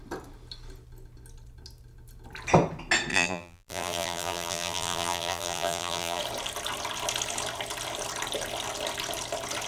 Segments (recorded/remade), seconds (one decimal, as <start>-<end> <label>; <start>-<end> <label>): 0.0-3.1 recorded; 3.1-6.2 remade; 6.2-9.7 recorded